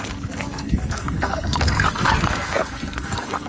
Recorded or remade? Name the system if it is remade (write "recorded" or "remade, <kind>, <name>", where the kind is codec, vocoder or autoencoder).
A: remade, codec, SNAC